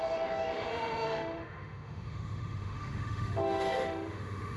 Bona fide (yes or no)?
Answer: no